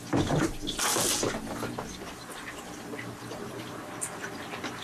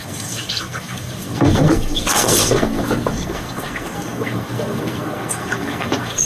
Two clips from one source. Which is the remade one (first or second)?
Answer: second